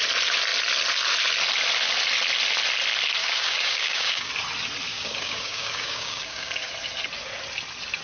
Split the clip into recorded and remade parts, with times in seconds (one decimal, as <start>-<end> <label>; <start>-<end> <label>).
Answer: 0.0-3.2 recorded; 3.2-4.3 remade; 4.3-4.9 recorded; 4.9-6.7 remade; 6.7-8.0 recorded